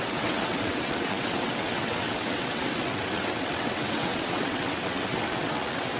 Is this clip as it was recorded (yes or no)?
no